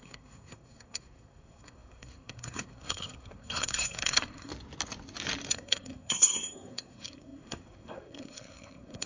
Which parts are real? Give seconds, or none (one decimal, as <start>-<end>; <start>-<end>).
4.5-5.5